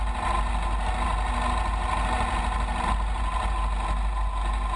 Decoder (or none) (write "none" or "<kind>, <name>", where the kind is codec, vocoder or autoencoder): none